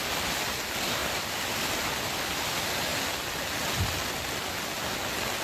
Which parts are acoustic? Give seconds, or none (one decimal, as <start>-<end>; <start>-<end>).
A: 0.0-1.0; 2.4-2.9; 3.8-5.4